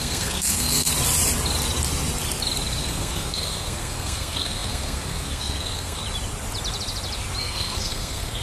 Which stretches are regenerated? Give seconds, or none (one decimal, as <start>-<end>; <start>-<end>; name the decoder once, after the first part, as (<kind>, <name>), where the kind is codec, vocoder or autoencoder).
0.0-0.9 (codec, SNAC); 2.8-6.0; 7.4-8.4